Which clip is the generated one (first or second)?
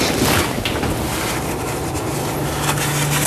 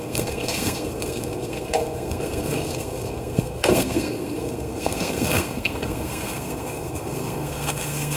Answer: second